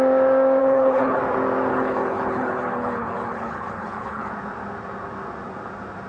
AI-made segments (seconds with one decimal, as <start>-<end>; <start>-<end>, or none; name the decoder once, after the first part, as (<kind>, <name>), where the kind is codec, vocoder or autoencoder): 0.6-1.2 (codec, HILCodec); 1.7-4.3